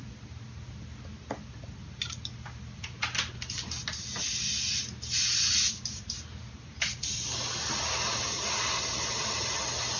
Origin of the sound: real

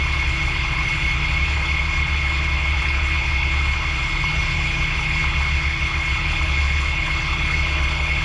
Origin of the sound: fake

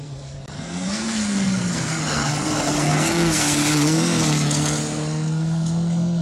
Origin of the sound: fake